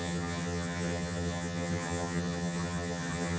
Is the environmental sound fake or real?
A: fake